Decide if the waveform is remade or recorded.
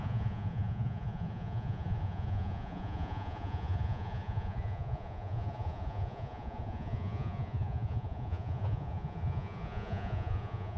remade